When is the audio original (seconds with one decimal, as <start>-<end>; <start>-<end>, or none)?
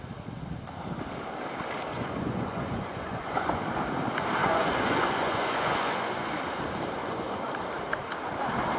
0.0-1.9; 3.6-4.4; 6.4-7.0; 7.5-8.8